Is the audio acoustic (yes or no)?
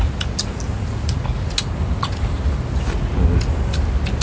yes